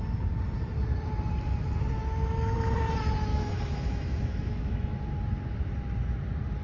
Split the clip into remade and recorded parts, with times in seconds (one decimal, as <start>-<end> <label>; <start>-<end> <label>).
0.0-3.3 recorded; 3.3-5.0 remade; 5.0-6.6 recorded